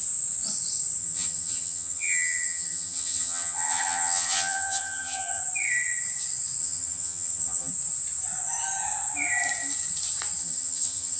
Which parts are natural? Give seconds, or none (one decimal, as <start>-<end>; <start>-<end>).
0.0-1.0; 5.4-6.6; 7.7-10.4